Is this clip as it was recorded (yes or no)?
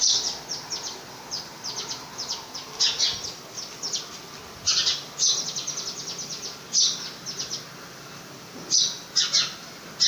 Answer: yes